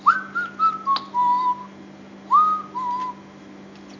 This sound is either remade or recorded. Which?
recorded